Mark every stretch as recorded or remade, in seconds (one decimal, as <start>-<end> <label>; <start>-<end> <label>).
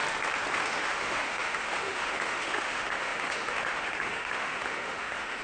0.0-0.5 recorded; 0.5-5.4 remade